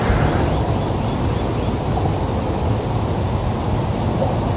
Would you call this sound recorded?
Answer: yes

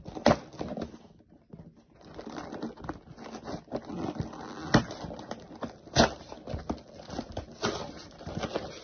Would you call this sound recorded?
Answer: yes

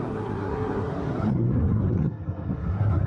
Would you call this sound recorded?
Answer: no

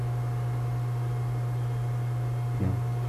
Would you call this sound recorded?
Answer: yes